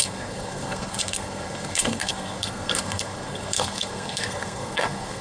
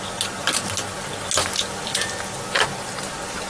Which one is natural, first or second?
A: second